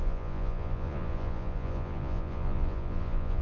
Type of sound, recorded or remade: remade